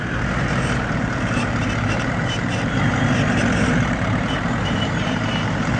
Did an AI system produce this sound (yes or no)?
yes